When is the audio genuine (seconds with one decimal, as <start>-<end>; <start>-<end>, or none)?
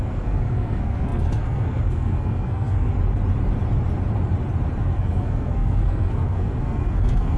2.9-4.8